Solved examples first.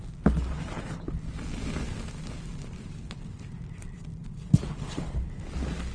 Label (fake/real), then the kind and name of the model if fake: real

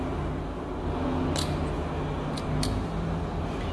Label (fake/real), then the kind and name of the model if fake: real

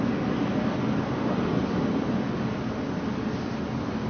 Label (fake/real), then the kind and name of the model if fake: real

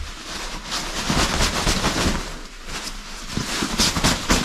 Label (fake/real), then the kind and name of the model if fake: real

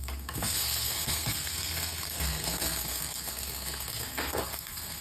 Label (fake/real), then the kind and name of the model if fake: fake, codec, SNAC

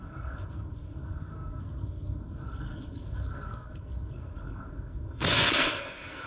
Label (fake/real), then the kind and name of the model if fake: fake, codec, SNAC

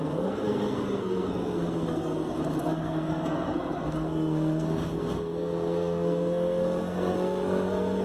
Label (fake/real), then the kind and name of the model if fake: fake, codec, SNAC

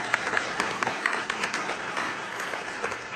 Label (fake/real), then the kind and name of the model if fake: fake, codec, SNAC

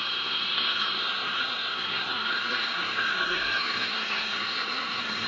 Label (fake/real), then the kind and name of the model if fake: fake, codec, SNAC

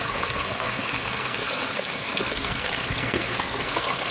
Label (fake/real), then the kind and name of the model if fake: fake, codec, SNAC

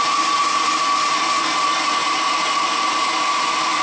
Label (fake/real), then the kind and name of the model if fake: real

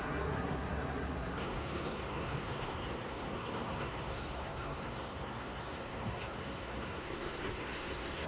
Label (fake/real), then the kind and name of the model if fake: fake, codec, SNAC